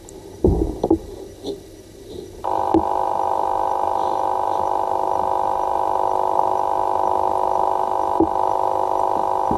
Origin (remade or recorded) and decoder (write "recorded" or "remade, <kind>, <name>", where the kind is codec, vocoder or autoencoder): recorded